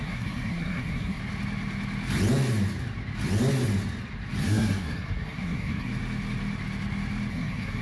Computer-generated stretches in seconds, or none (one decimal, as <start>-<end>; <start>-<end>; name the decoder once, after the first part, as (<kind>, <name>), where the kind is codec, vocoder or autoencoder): 0.0-1.2 (codec, SNAC); 4.4-5.9; 7.3-7.8